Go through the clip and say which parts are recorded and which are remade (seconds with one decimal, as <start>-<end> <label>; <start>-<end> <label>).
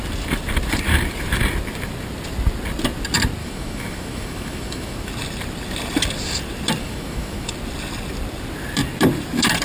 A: 0.0-3.4 recorded; 3.4-5.1 remade; 5.1-6.8 recorded; 6.8-7.5 remade; 7.5-9.6 recorded